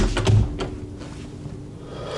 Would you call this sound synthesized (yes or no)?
no